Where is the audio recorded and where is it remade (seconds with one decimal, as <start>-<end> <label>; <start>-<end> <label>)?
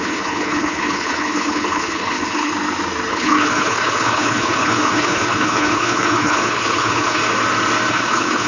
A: 0.0-2.5 remade; 2.5-3.1 recorded; 3.1-7.2 remade; 7.2-7.9 recorded; 7.9-8.5 remade